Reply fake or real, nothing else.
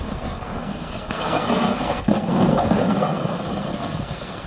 fake